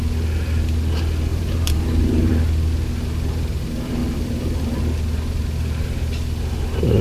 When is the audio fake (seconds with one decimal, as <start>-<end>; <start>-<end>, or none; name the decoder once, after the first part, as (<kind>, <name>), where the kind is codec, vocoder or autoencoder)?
1.3-2.3 (vocoder, BigVGAN v2); 4.0-4.8